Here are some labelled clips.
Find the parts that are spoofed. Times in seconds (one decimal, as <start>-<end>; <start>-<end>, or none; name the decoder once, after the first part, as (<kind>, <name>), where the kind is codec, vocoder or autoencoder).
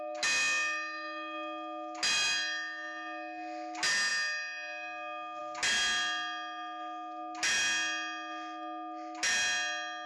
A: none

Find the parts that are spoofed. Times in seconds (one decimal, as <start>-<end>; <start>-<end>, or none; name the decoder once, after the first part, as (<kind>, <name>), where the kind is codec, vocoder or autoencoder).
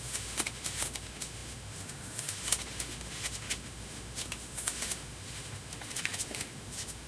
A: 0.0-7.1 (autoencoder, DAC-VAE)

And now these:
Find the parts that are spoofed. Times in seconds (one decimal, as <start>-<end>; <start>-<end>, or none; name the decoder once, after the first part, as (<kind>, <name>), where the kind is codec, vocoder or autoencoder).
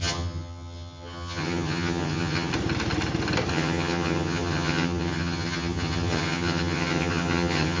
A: 0.0-2.5 (vocoder, HiFi-GAN); 3.5-7.8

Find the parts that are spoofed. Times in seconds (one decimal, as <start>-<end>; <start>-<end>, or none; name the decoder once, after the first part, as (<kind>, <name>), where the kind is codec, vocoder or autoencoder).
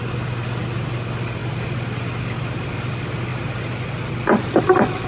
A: none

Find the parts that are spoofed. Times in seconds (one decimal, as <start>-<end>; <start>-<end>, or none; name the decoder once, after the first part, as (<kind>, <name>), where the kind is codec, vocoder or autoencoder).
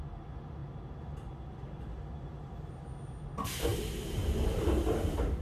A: none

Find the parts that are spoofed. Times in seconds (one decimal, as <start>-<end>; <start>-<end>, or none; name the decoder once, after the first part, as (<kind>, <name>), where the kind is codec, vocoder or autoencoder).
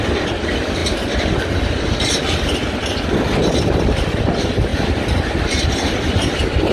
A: none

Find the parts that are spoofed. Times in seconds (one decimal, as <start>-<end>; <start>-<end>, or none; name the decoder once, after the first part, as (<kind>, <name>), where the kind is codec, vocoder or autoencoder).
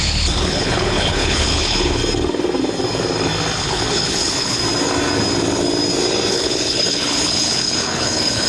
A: 0.0-2.0 (codec, HILCodec); 3.6-4.6; 6.3-8.5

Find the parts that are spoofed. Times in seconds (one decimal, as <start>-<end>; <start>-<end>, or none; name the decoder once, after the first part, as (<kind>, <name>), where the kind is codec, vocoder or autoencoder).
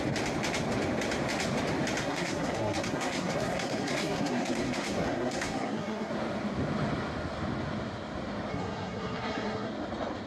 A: 2.0-6.1 (codec, SNAC); 8.5-9.7